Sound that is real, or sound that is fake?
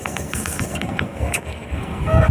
fake